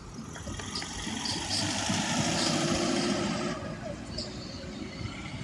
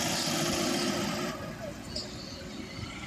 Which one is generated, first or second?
first